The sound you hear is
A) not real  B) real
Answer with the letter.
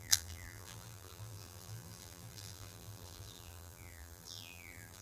A